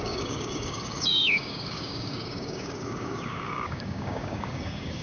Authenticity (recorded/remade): remade